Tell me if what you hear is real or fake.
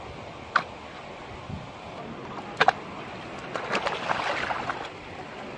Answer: real